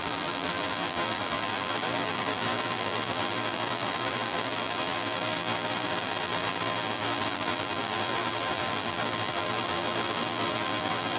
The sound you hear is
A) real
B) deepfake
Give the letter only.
B